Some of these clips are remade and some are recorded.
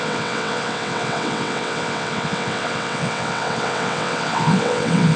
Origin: remade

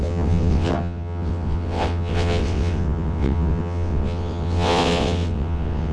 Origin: remade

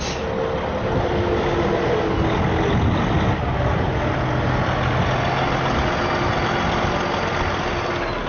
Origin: recorded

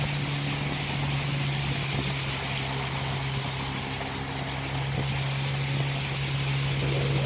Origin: recorded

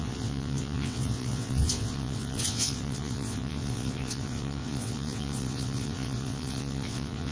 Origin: remade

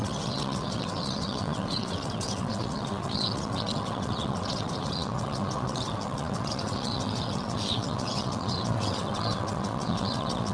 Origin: remade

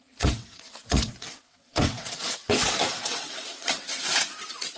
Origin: remade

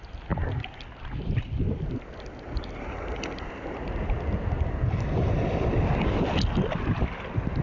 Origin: recorded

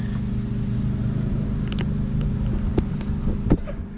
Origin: recorded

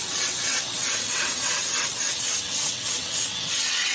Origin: remade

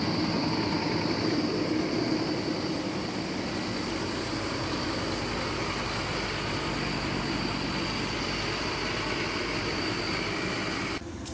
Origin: recorded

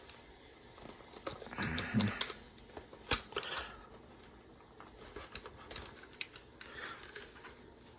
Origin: recorded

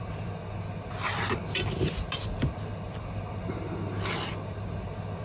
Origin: recorded